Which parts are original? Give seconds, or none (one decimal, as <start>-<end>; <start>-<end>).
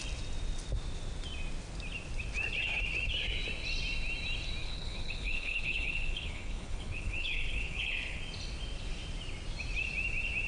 0.0-4.6; 8.2-10.5